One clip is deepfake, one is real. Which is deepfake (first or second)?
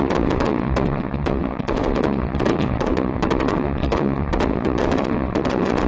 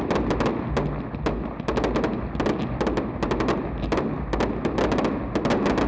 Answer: first